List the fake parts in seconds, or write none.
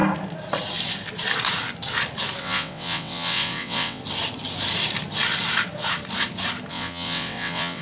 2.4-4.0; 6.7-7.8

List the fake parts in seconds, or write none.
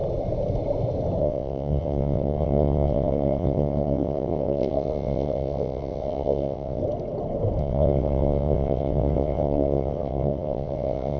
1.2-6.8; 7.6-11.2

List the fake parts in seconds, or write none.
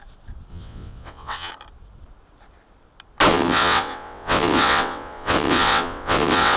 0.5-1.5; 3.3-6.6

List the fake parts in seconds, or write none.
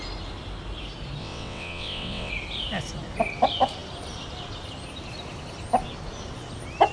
1.2-2.3